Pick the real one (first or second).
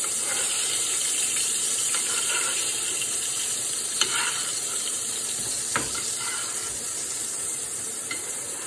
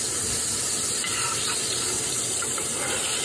second